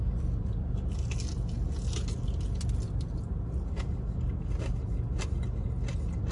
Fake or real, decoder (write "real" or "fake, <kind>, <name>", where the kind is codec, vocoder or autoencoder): real